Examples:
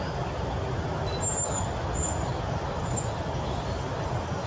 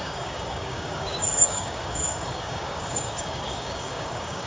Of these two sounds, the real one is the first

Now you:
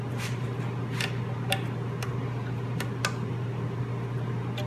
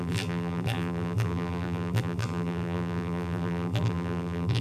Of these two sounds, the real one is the first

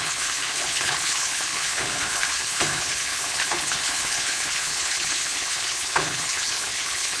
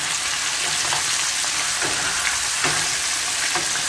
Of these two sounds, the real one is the second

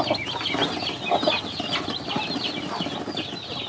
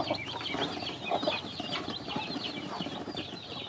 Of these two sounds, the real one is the first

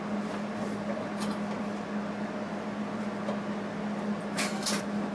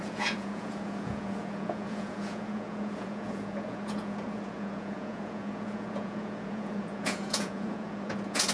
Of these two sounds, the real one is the first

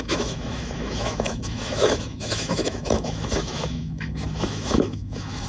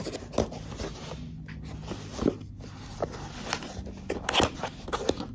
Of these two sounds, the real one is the second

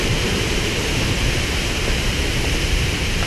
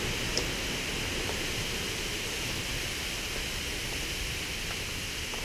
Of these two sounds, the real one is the second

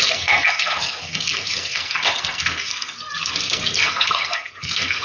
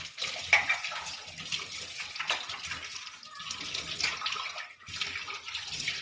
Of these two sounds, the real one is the second